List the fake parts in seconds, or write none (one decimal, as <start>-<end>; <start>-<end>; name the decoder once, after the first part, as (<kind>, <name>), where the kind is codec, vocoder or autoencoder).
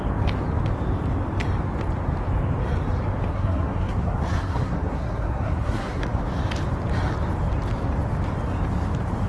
3.3-6.2 (codec, SNAC)